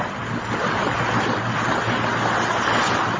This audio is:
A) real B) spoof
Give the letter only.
A